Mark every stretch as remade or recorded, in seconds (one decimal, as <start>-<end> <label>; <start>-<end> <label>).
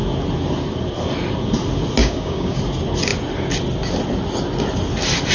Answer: 0.0-2.0 recorded; 2.0-2.6 remade; 2.6-5.3 recorded